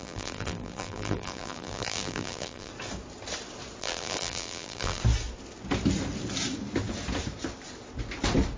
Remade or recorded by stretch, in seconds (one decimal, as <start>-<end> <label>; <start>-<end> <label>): 0.0-2.7 remade; 2.7-3.8 recorded; 3.8-5.0 remade; 5.0-8.6 recorded